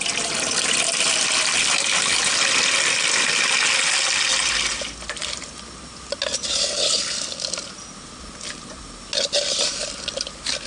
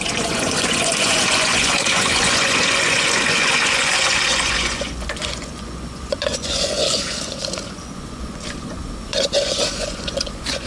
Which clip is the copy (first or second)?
second